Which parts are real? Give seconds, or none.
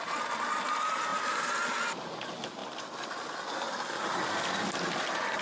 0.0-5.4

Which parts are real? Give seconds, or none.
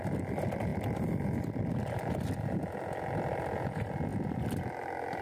0.0-5.2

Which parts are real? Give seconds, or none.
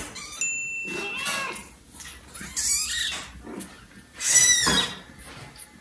0.0-5.8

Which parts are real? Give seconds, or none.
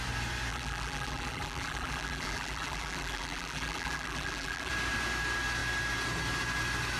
0.0-0.5; 4.7-7.0